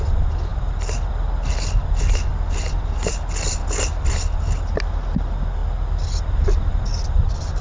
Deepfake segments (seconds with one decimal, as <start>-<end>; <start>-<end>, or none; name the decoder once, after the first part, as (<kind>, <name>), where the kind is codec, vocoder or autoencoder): none